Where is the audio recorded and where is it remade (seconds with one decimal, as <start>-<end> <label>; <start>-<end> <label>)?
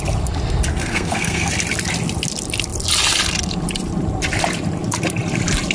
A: 0.0-0.7 recorded; 0.7-1.5 remade; 1.5-5.7 recorded